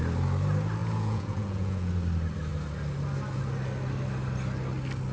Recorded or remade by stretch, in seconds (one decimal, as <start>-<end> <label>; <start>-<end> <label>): 0.0-0.8 recorded; 0.8-1.9 remade; 1.9-5.1 recorded

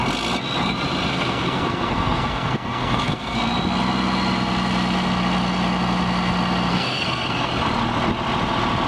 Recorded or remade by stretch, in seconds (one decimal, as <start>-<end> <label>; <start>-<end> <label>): 0.0-1.1 recorded; 1.1-3.4 remade; 3.4-6.7 recorded; 6.7-7.5 remade; 7.5-8.9 recorded

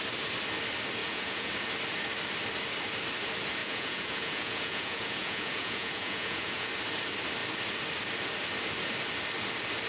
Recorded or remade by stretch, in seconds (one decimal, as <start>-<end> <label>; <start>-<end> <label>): 0.0-1.0 recorded; 1.0-1.5 remade; 1.5-3.6 recorded; 3.6-6.7 remade; 6.7-9.9 recorded

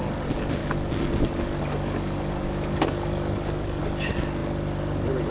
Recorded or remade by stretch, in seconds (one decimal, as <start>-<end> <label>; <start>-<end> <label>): 0.0-0.6 recorded; 0.6-3.8 remade; 3.8-5.3 recorded